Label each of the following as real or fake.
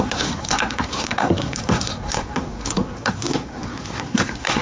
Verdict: fake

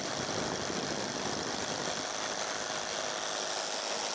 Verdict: real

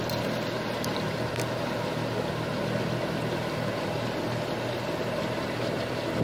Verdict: real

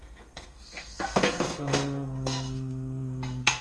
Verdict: fake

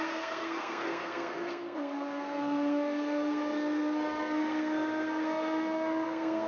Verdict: fake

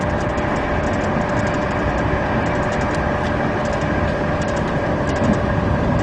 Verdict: real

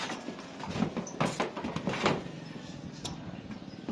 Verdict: real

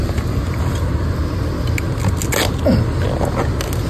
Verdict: real